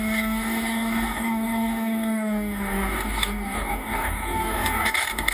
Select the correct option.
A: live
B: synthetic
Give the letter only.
B